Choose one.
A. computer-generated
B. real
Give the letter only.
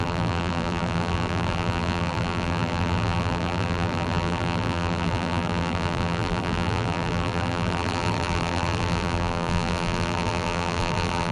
A